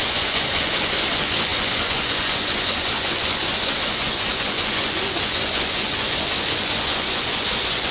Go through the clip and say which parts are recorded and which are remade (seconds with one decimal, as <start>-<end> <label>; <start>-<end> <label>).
0.0-7.9 remade